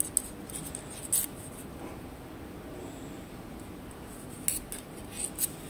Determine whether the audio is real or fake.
real